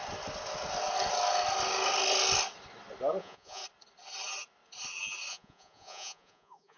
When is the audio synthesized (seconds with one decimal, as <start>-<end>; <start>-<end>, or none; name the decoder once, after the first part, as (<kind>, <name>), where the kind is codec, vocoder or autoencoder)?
3.2-3.6 (vocoder, Vocos); 5.3-6.8